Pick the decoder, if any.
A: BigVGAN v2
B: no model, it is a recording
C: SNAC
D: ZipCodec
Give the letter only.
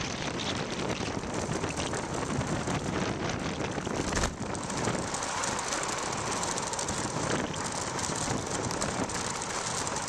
A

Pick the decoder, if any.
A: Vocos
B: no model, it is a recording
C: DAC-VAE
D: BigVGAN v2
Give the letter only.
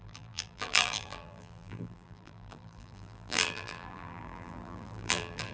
D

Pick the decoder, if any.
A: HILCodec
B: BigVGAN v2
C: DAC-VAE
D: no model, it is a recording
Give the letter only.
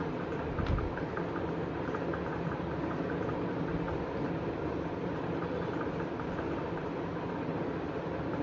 D